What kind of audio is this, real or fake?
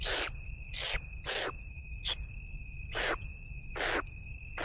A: real